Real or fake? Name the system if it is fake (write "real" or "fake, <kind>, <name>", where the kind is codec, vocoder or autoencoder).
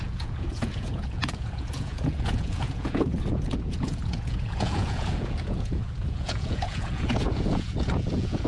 fake, vocoder, Vocos